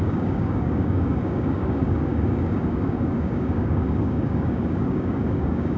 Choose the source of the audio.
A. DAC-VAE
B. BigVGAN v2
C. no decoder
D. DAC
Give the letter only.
D